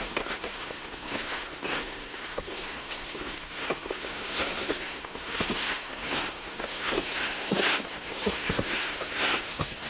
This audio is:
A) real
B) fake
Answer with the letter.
B